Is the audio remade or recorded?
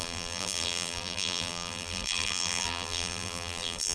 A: remade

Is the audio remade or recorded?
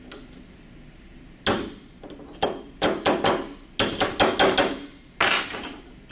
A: recorded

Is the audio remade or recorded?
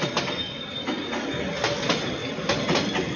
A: recorded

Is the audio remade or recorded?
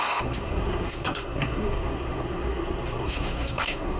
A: remade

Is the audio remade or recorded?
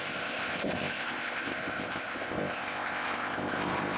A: remade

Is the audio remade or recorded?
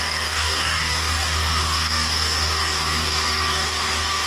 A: remade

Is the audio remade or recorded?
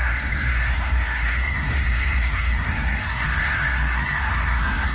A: remade